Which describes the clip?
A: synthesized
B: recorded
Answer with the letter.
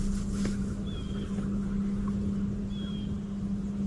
B